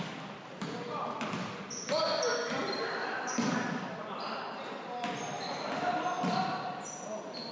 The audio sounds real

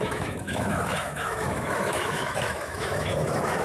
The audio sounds fake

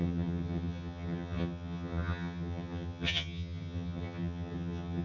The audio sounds fake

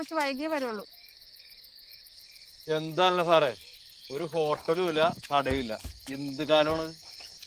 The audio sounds fake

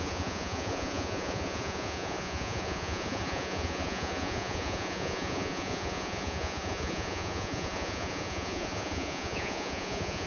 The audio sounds fake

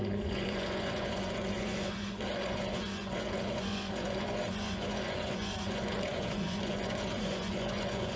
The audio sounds fake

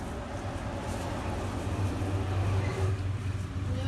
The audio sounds real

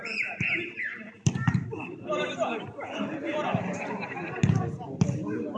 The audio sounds real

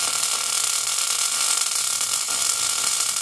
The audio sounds real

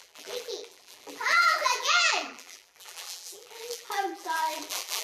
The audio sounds fake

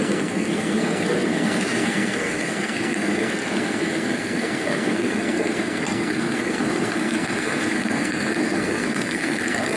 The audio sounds fake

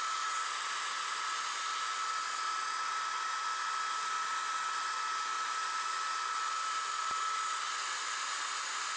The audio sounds real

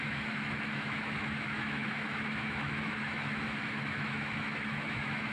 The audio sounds fake